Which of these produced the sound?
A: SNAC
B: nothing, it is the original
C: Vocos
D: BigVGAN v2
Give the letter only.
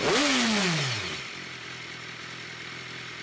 B